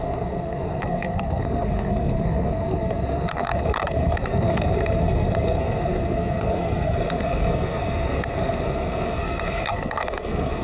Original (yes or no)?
no